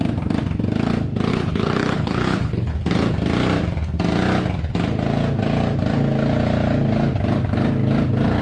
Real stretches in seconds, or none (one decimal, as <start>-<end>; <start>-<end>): 0.0-1.3; 2.7-8.4